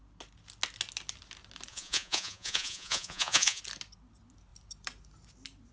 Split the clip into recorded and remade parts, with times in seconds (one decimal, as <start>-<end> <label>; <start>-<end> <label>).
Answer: 0.0-1.7 recorded; 1.7-3.6 remade; 3.6-5.7 recorded